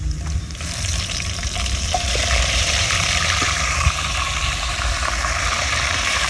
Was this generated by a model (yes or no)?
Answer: yes